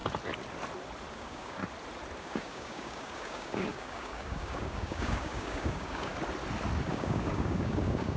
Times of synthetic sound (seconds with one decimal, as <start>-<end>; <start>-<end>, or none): 1.1-1.6; 2.2-6.1; 6.9-8.2